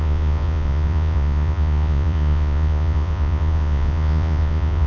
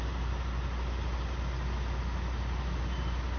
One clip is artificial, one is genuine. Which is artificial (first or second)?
first